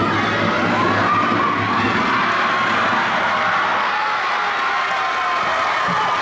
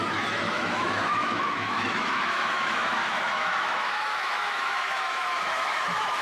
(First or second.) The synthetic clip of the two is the second